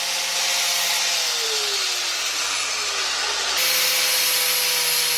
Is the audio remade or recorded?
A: recorded